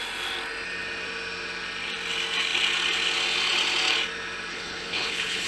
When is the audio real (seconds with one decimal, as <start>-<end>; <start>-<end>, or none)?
0.0-4.5